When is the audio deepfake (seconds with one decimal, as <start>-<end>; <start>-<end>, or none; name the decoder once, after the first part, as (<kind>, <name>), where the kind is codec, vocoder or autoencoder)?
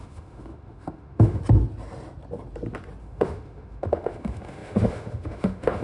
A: 0.0-1.4 (autoencoder, DAC-VAE); 3.0-5.8